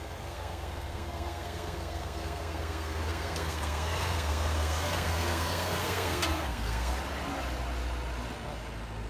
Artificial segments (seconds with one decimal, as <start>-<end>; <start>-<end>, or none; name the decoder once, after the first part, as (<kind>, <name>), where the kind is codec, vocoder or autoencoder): 0.0-6.9 (codec, SNAC)